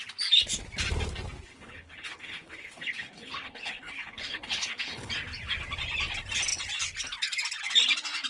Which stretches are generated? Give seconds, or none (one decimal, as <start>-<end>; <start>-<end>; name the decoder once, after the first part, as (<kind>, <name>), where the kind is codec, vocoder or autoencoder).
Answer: 1.5-5.1 (codec, HILCodec)